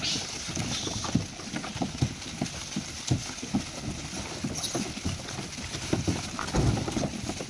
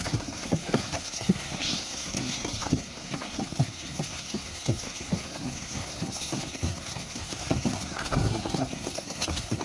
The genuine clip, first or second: first